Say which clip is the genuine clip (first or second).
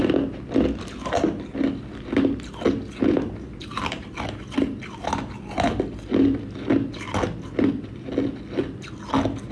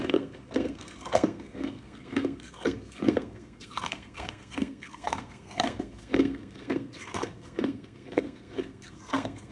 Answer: first